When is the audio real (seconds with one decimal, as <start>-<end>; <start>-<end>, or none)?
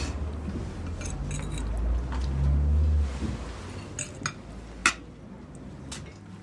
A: 0.0-6.4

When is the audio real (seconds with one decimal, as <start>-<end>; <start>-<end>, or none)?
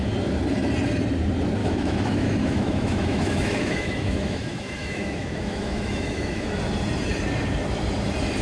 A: 0.0-1.6; 6.6-8.4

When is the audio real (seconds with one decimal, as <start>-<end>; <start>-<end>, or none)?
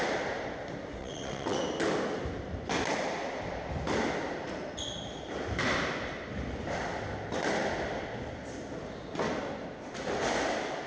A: 0.0-1.0; 1.6-10.9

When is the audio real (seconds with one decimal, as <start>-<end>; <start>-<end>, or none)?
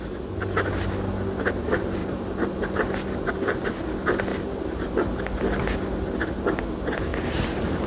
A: 0.0-2.0; 2.5-4.3; 5.2-7.1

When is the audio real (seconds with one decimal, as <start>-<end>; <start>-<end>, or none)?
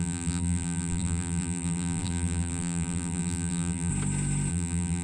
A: 3.9-4.5